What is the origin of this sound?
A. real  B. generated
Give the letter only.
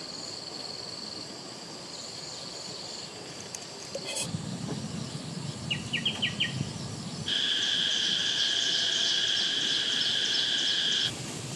A